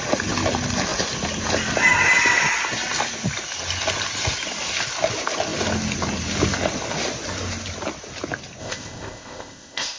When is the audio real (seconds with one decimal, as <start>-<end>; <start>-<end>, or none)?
0.0-8.6